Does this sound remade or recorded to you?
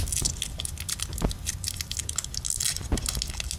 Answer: recorded